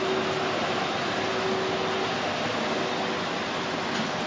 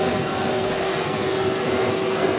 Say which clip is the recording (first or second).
first